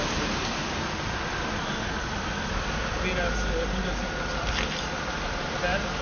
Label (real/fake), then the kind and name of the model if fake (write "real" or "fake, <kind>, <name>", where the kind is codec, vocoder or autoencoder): real